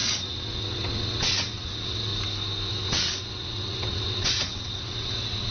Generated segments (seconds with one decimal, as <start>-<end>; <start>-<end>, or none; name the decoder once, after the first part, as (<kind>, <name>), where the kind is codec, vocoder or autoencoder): 0.0-2.1 (vocoder, WaveNeXt); 2.7-5.5